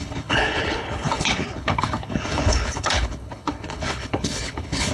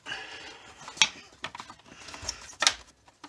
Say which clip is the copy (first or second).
first